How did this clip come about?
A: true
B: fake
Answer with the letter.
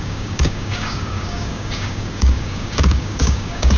B